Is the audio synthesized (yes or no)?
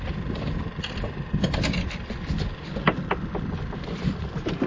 no